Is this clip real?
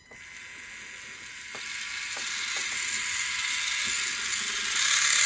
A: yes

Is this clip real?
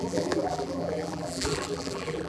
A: no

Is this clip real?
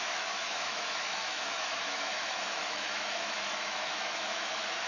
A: no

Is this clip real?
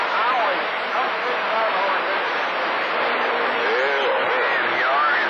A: yes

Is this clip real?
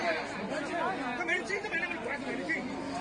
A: yes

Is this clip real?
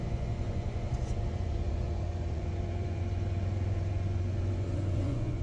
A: no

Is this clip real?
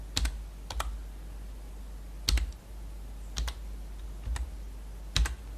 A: yes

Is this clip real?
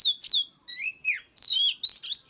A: yes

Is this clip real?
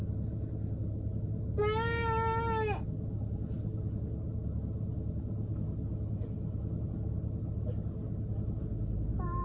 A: yes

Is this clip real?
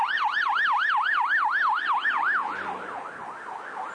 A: yes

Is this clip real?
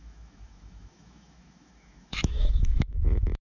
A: no